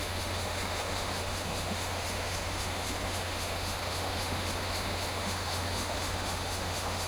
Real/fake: fake